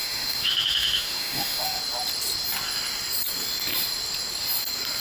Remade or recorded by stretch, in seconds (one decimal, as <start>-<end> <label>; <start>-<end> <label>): 0.0-1.8 remade; 1.8-5.0 recorded